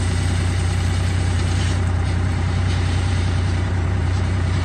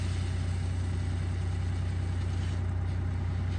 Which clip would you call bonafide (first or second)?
second